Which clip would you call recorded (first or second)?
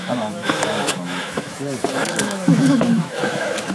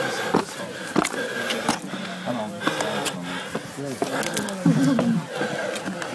second